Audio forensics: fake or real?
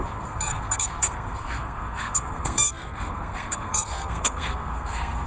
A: fake